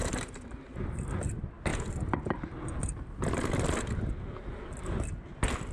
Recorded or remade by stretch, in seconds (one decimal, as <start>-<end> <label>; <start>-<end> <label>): 0.0-1.1 remade; 1.1-5.7 recorded